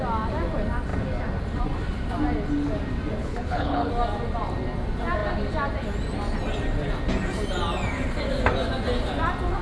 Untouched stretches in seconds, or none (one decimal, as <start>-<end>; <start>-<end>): 0.0-3.2; 3.9-9.6